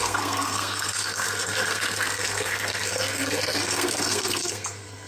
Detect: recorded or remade remade